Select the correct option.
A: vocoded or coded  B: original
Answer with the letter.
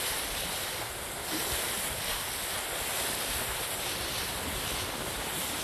B